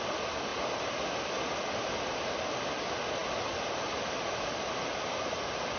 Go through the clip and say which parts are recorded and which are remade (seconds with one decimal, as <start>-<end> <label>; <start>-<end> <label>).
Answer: 0.0-5.8 recorded